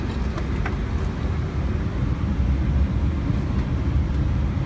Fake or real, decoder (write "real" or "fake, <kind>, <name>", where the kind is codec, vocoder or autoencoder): real